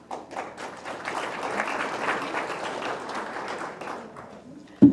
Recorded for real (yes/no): yes